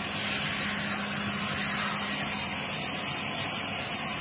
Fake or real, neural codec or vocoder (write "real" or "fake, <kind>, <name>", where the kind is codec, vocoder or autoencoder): real